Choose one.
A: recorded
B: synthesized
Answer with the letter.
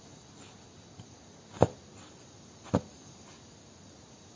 A